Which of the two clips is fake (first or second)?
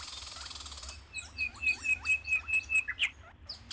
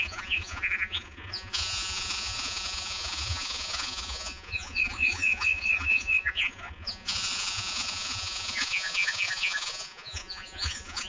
second